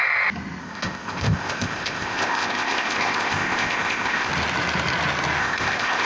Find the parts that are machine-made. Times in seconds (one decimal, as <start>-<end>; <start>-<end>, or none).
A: 0.6-4.3; 5.4-6.1